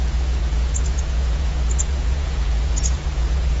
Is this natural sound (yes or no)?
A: no